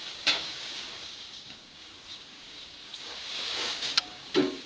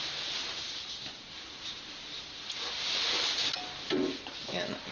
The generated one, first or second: first